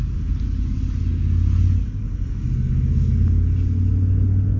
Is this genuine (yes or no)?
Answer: yes